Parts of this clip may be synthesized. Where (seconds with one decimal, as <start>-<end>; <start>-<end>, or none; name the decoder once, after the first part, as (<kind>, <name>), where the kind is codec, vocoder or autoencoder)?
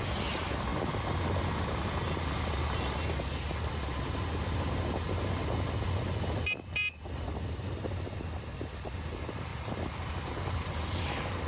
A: 9.5-11.5 (vocoder, BigVGAN v2)